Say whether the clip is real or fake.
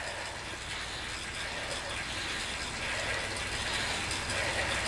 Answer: real